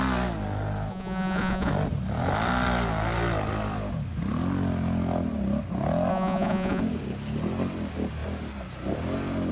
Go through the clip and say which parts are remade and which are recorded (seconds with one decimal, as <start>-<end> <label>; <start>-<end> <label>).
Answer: 0.0-0.9 recorded; 0.9-1.7 remade; 1.7-6.1 recorded; 6.1-6.8 remade; 6.8-9.5 recorded